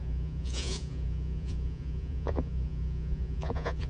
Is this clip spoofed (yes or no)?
yes